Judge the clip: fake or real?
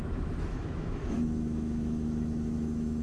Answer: fake